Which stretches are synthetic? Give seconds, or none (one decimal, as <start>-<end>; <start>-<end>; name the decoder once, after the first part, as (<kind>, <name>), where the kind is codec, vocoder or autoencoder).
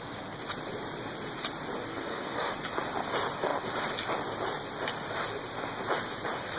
1.9-2.5 (codec, SNAC)